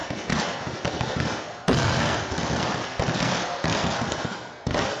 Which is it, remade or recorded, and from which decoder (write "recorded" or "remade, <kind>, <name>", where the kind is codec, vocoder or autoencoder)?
remade, codec, SNAC